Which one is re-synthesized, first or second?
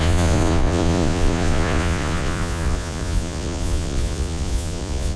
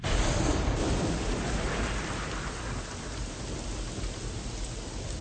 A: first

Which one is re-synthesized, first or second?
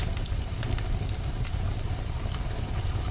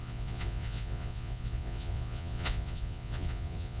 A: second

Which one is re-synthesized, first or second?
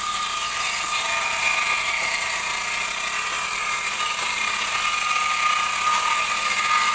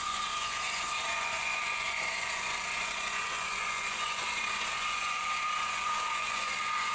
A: second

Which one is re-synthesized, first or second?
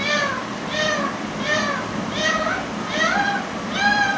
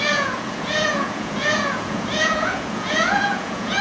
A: second